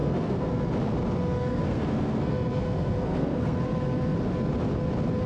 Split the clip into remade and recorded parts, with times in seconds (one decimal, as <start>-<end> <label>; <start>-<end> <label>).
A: 0.0-0.6 remade; 0.6-1.5 recorded; 1.5-3.6 remade; 3.6-5.3 recorded